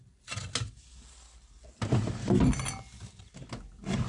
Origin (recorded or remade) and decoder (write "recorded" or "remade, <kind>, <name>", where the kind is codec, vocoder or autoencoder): recorded